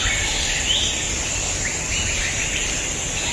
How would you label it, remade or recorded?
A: recorded